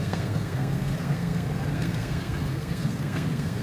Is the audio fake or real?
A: fake